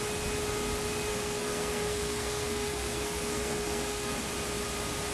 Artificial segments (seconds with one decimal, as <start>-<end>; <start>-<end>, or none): 1.1-4.2